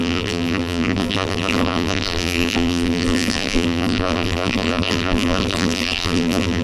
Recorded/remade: remade